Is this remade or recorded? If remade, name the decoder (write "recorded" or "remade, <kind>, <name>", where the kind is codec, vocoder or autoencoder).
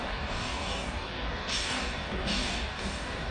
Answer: remade, codec, DAC